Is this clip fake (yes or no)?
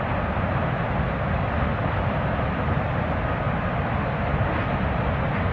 no